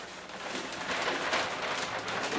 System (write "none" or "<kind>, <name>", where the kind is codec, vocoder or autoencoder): none